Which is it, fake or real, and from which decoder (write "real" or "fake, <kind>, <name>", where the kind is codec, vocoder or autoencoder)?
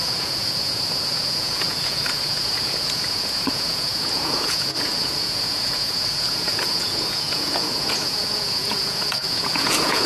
fake, vocoder, Vocos